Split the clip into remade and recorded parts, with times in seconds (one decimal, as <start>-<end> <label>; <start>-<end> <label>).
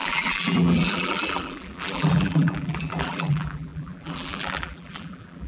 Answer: 0.0-5.5 remade